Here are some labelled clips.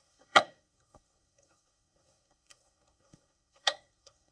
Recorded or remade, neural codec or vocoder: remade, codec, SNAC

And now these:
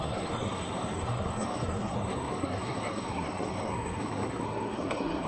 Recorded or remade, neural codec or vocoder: remade, codec, SNAC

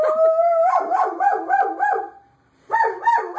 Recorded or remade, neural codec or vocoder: remade, vocoder, BigVGAN v2